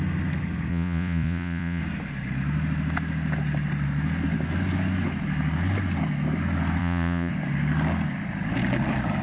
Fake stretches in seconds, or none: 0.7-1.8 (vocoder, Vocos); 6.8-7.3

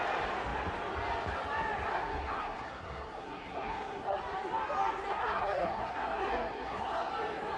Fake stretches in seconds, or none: 1.9-4.2 (codec, SNAC); 5.1-7.1